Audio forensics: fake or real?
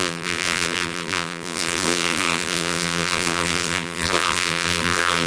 fake